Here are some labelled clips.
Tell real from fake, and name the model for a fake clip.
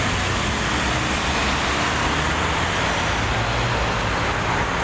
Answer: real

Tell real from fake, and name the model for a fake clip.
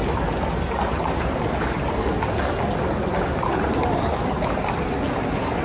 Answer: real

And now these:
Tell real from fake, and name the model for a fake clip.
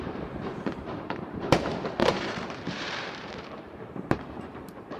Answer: fake, vocoder, BigVGAN v2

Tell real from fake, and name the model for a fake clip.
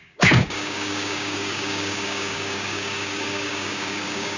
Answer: fake, codec, DAC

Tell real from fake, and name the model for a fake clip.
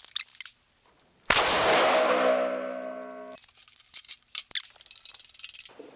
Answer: real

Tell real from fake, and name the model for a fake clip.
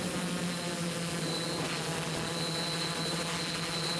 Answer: real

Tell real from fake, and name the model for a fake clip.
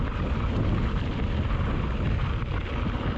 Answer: real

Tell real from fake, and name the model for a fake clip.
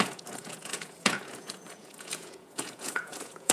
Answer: fake, vocoder, Vocos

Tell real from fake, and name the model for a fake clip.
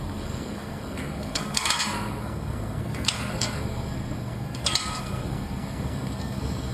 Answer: fake, codec, SNAC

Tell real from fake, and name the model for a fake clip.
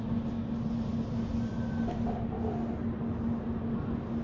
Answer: real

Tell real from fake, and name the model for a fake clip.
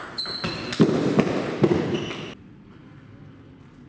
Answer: real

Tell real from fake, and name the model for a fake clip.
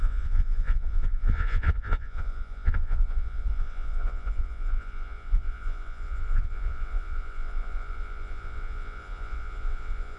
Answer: fake, vocoder, Vocos